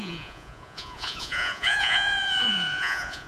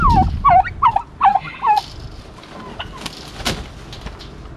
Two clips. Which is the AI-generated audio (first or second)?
first